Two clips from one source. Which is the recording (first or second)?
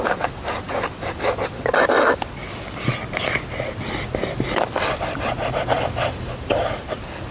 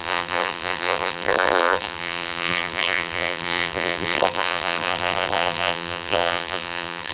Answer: first